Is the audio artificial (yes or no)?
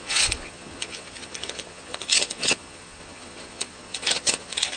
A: yes